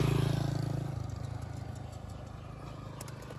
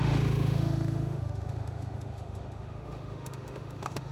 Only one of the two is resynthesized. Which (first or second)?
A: second